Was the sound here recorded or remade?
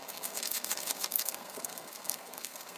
remade